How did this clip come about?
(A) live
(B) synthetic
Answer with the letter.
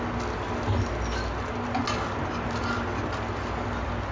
A